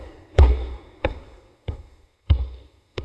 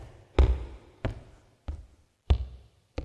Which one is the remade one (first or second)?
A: first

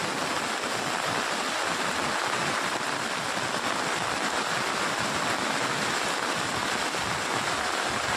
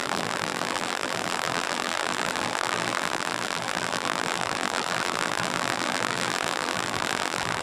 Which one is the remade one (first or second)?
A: second